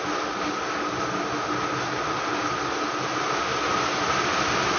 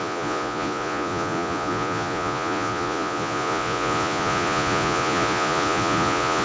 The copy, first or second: second